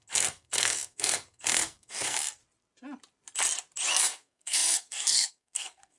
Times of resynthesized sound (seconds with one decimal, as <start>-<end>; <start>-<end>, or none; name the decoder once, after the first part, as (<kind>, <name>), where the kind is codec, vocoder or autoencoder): 0.0-2.4 (codec, SNAC); 3.9-6.0